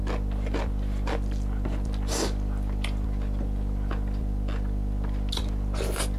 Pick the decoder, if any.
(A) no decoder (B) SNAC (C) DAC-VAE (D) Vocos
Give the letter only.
A